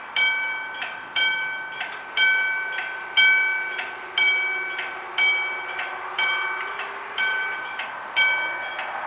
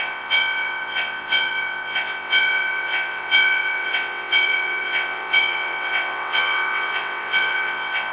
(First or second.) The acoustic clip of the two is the first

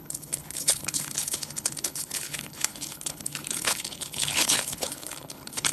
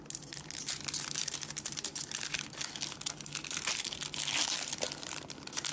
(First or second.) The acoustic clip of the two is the second